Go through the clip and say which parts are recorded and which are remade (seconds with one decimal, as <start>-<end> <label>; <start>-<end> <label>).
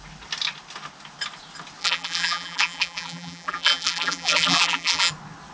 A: 0.0-1.8 recorded; 1.8-5.1 remade; 5.1-5.5 recorded